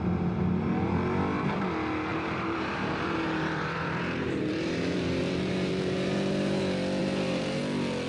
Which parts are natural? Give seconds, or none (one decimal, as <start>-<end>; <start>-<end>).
0.0-2.1; 6.6-7.0; 7.6-8.1